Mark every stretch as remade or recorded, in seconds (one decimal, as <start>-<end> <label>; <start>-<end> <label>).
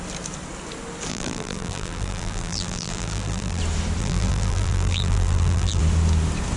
0.0-1.1 recorded; 1.1-3.6 remade; 3.6-4.0 recorded; 4.0-5.8 remade; 5.8-6.6 recorded